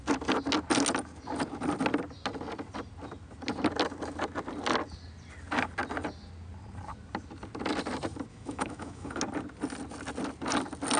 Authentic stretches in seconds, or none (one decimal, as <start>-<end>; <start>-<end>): 0.0-8.3; 9.2-11.0